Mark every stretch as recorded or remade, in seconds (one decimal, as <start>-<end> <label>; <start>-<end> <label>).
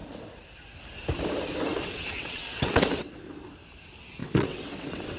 0.0-1.7 recorded; 1.7-3.2 remade; 3.2-4.2 recorded; 4.2-5.2 remade